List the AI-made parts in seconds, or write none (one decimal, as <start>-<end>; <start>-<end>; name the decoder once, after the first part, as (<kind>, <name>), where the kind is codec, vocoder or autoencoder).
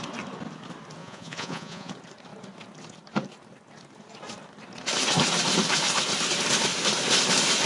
1.0-1.9 (vocoder, Vocos)